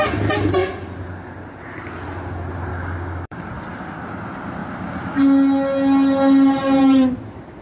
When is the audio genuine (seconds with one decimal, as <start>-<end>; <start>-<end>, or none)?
0.0-2.7; 3.4-7.6